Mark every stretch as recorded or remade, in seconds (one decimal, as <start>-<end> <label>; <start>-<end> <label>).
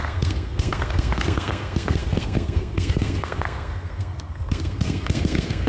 0.0-5.7 remade